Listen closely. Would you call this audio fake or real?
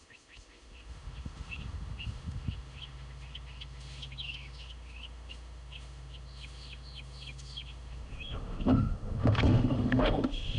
fake